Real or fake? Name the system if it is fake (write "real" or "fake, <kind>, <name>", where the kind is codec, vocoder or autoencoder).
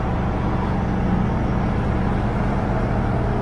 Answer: real